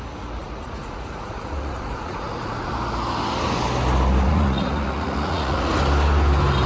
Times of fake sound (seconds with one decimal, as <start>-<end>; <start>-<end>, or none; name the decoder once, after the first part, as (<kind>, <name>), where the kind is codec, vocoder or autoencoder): 0.4-2.7 (vocoder, Vocos); 4.3-5.7